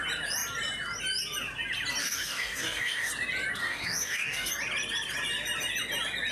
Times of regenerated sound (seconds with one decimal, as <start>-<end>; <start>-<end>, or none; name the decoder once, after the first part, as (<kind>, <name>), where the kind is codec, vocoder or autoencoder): 2.0-3.1 (codec, DAC); 3.6-4.5